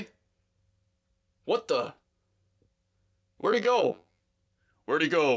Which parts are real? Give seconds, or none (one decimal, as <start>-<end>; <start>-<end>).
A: 0.0-3.4; 4.2-5.4